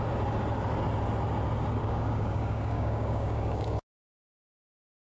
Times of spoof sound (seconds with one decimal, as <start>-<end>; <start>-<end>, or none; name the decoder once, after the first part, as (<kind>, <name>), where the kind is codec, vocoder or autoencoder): 1.8-5.2 (codec, DAC)